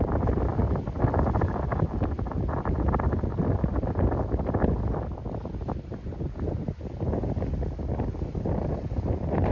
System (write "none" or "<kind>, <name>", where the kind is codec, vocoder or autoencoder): none